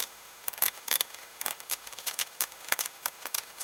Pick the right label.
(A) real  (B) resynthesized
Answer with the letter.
B